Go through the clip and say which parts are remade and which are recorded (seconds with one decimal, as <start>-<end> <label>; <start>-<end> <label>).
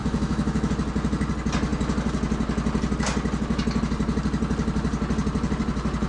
0.0-0.7 remade; 0.7-6.1 recorded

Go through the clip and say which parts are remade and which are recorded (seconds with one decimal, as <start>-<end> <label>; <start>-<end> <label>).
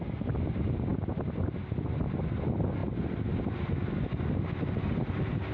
0.0-5.5 recorded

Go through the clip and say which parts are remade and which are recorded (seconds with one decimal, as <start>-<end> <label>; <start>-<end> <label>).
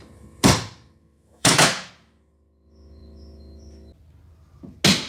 0.0-1.0 recorded; 1.0-1.9 remade; 1.9-5.1 recorded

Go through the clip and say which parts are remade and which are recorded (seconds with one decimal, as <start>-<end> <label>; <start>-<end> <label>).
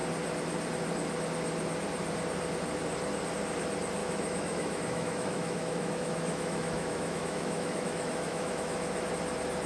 0.0-4.0 recorded; 4.0-9.1 remade; 9.1-9.7 recorded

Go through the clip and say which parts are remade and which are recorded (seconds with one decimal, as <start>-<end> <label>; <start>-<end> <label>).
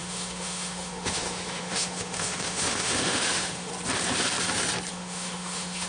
0.0-3.7 remade; 3.7-4.9 recorded; 4.9-5.9 remade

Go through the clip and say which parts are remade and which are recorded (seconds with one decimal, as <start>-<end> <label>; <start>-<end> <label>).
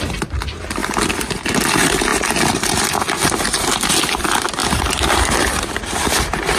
0.0-6.6 recorded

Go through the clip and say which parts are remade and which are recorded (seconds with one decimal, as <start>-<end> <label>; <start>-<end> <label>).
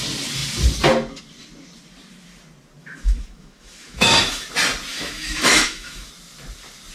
0.0-2.8 recorded; 2.8-4.5 remade; 4.5-4.9 recorded; 4.9-6.1 remade; 6.1-6.9 recorded